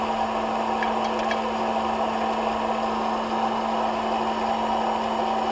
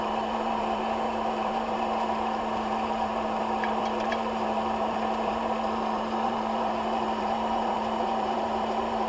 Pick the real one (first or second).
first